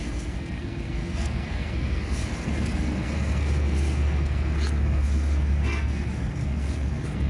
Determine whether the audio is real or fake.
fake